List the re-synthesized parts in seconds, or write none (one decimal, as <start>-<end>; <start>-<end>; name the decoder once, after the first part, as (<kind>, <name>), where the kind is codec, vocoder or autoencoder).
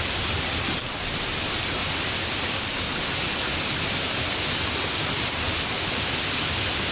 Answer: none